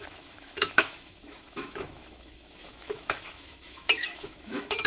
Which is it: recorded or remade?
remade